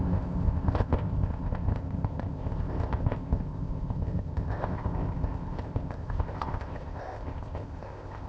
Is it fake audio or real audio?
fake